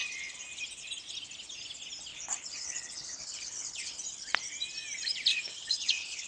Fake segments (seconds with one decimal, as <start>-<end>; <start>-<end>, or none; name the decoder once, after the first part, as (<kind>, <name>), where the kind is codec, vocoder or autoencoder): 2.1-4.0 (codec, HILCodec); 5.3-6.3